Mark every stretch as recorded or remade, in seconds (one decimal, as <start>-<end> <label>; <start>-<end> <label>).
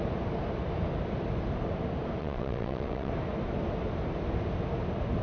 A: 0.0-2.2 recorded; 2.2-3.1 remade; 3.1-5.2 recorded